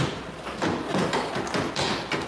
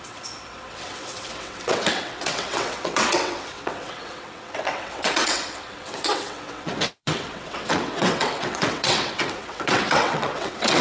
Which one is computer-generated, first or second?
second